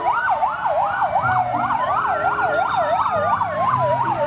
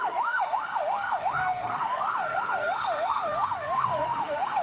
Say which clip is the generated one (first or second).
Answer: second